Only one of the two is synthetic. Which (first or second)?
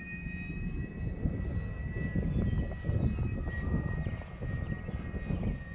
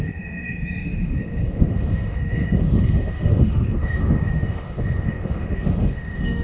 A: second